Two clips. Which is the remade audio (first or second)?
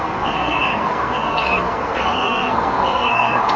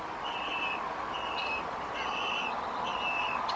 first